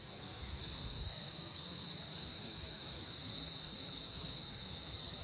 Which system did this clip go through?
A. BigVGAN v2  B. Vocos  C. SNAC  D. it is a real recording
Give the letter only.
C